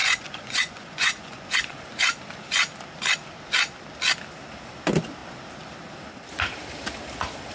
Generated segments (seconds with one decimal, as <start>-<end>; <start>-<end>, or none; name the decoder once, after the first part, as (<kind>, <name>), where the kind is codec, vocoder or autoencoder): 0.0-1.8 (vocoder, Vocos)